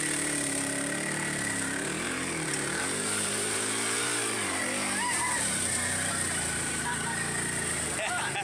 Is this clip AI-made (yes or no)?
yes